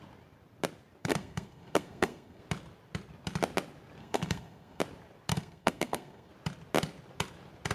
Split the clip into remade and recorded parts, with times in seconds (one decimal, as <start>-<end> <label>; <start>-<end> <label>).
0.0-1.0 recorded; 1.0-2.4 remade; 2.4-4.0 recorded; 4.0-4.8 remade; 4.8-5.3 recorded; 5.3-6.3 remade; 6.3-7.7 recorded